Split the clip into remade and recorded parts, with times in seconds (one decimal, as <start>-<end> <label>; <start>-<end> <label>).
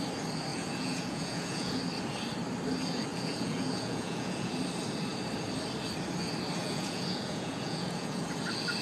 0.0-0.5 recorded; 0.5-1.8 remade; 1.8-3.1 recorded; 3.1-4.6 remade; 4.6-6.6 recorded; 6.6-8.2 remade; 8.2-8.8 recorded